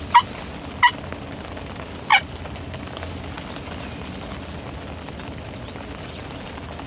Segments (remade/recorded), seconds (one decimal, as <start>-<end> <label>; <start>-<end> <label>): 0.0-6.9 recorded